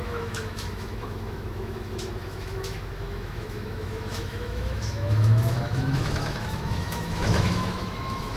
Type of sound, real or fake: fake